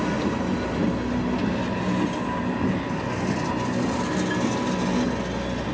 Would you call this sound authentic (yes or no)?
yes